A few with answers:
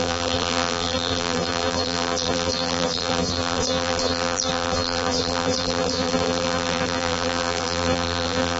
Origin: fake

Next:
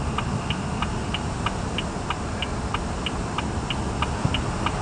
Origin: real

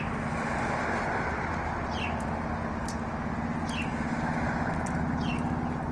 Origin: real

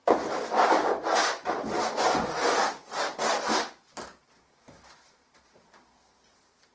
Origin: real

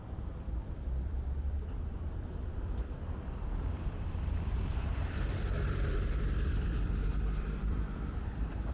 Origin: fake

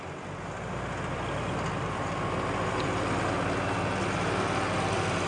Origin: real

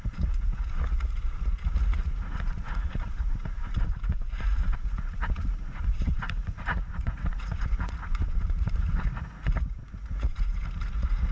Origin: fake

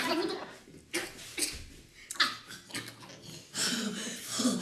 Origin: real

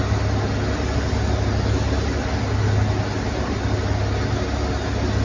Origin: real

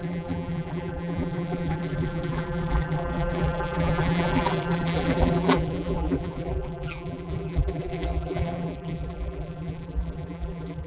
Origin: fake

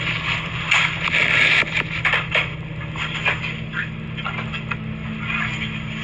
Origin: real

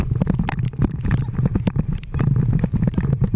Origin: real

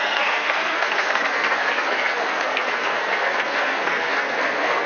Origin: fake